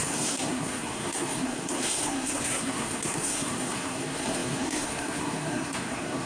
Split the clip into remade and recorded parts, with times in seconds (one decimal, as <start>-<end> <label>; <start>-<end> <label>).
0.0-6.3 remade